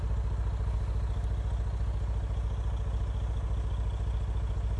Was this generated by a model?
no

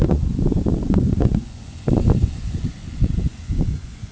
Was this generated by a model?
yes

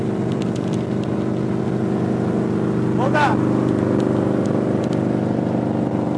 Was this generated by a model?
no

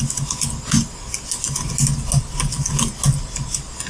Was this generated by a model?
no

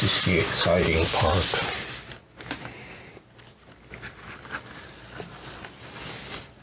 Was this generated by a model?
no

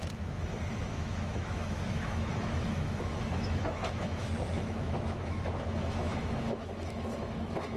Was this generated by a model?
yes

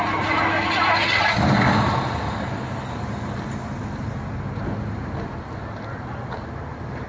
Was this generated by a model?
no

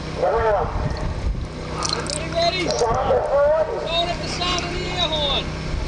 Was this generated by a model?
no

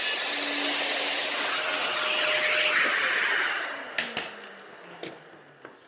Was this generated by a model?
no